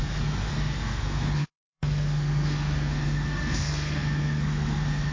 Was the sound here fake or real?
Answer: fake